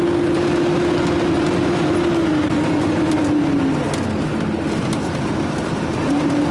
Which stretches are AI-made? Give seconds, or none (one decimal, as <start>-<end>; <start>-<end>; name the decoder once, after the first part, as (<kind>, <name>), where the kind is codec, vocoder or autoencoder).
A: 4.3-6.5 (vocoder, BigVGAN v2)